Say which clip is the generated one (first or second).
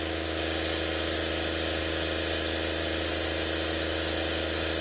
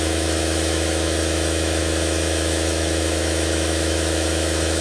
second